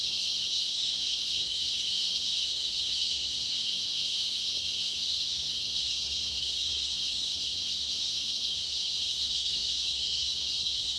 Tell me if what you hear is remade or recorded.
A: remade